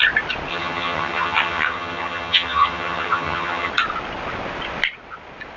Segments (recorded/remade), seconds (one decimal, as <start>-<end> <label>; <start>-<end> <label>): 0.0-0.5 recorded; 0.5-3.7 remade; 3.7-5.6 recorded